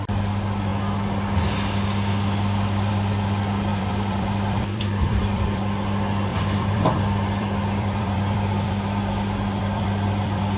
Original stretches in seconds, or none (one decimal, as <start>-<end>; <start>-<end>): 0.0-3.7; 5.6-6.3